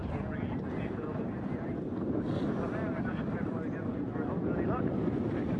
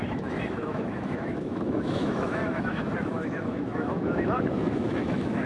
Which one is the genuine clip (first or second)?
first